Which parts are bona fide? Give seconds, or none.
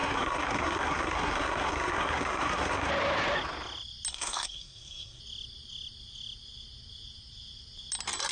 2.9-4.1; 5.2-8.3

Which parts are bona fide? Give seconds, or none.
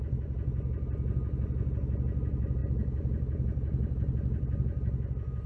0.0-5.5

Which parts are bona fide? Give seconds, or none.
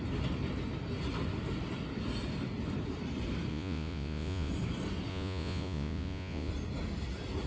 0.0-3.5; 4.5-5.1; 6.5-7.5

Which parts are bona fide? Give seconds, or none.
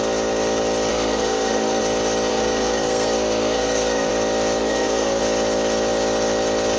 0.0-0.9; 1.8-2.3; 4.1-4.6; 5.2-6.8